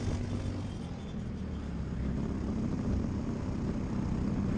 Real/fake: real